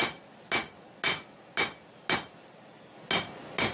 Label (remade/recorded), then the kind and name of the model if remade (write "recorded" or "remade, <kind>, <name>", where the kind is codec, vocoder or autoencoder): recorded